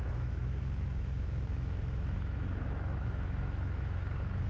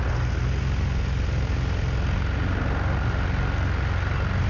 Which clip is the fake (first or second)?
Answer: first